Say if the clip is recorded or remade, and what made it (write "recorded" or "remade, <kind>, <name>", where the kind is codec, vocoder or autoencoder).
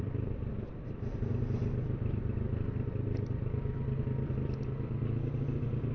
recorded